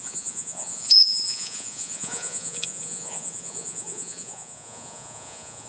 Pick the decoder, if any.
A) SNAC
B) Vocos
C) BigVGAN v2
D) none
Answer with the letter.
B